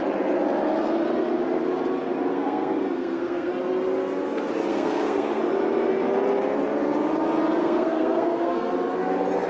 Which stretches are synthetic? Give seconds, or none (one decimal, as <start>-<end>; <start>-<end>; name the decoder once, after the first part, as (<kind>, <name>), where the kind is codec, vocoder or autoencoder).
2.3-3.5 (codec, SNAC); 4.7-5.4; 7.6-8.7